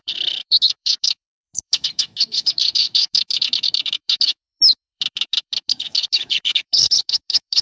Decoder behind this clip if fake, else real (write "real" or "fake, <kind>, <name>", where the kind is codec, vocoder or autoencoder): fake, autoencoder, DAC-VAE